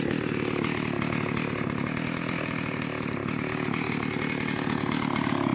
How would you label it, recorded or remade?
recorded